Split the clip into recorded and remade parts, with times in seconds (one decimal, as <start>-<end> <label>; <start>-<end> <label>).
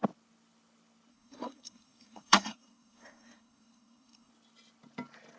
0.0-1.1 recorded; 1.1-4.3 remade; 4.3-5.4 recorded